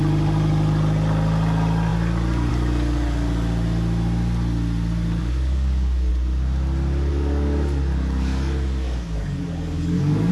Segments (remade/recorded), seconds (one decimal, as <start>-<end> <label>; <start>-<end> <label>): 0.0-5.2 recorded; 5.2-6.1 remade; 6.1-7.1 recorded; 7.1-10.3 remade